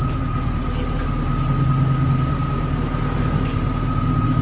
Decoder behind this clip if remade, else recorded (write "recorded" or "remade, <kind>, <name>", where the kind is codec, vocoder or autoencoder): recorded